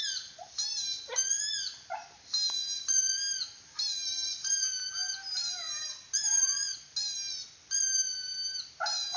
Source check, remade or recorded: recorded